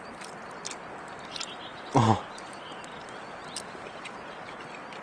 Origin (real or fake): real